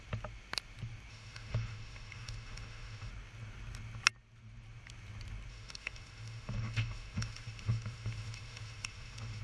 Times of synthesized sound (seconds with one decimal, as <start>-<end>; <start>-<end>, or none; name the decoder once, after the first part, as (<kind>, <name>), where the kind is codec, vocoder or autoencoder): 1.1-3.1 (autoencoder, DAC-VAE); 5.5-9.4